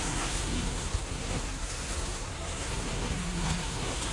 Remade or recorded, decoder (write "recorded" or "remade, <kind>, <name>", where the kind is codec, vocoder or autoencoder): remade, codec, SNAC